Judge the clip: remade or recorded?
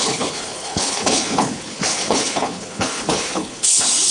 remade